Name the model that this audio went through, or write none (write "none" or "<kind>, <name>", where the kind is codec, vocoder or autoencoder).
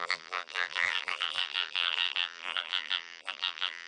vocoder, BigVGAN v2